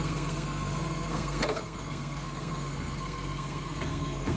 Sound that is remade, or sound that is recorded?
remade